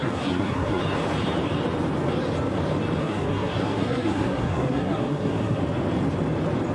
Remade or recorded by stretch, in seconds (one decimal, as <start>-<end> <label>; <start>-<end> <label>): 0.0-0.8 remade; 0.8-3.0 recorded; 3.0-5.6 remade; 5.6-6.7 recorded